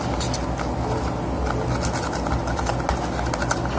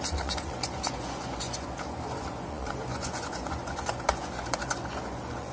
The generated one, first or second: second